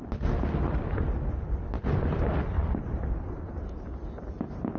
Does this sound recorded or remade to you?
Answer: recorded